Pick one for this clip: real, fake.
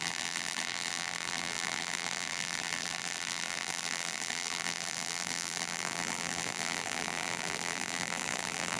fake